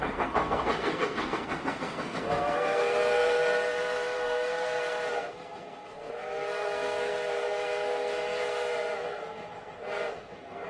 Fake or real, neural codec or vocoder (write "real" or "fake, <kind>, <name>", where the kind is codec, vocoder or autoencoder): fake, codec, SNAC